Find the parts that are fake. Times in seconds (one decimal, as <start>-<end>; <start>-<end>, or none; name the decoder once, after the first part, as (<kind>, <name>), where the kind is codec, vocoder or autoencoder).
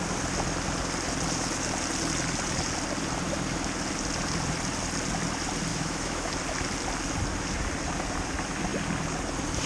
5.7-6.3 (autoencoder, DAC-VAE)